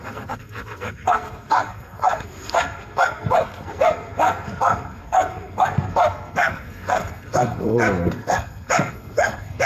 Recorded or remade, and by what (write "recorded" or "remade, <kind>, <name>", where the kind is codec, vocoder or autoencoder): remade, codec, SNAC